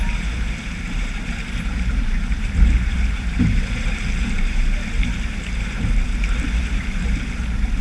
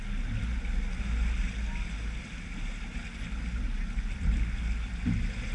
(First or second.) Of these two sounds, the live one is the second